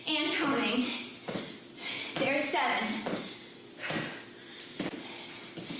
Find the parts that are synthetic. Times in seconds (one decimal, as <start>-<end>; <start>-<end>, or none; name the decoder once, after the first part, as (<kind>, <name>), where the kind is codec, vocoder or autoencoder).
4.4-5.1 (vocoder, BigVGAN v2)